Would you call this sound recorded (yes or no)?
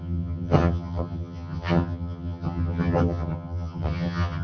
no